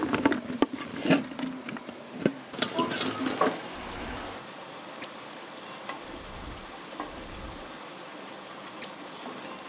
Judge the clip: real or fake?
real